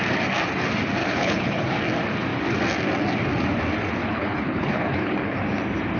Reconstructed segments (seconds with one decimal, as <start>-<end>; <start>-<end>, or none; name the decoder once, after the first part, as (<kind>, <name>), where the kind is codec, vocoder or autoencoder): 1.0-1.6 (codec, HILCodec); 4.0-5.4